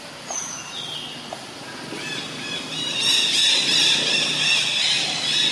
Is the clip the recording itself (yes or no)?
yes